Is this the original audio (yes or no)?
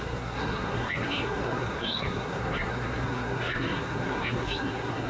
no